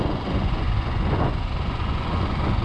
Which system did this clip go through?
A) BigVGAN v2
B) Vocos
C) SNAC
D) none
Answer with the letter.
B